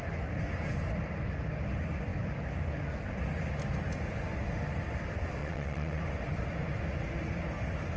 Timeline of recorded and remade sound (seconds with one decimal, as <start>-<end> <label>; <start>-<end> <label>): 0.0-5.4 recorded; 5.4-6.0 remade; 6.0-8.0 recorded